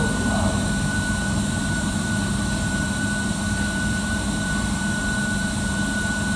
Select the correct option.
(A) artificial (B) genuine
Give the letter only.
A